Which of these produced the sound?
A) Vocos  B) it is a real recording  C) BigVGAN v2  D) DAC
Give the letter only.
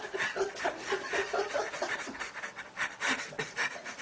B